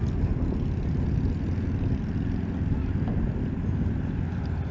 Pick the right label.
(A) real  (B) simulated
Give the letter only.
A